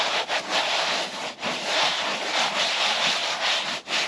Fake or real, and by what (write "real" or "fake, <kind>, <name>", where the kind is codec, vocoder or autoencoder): real